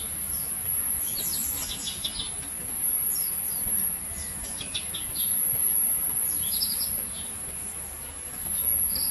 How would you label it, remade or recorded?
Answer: recorded